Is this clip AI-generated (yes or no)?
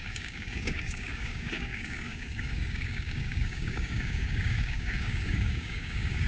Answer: yes